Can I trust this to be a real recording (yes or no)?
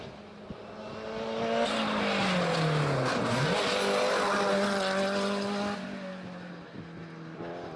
yes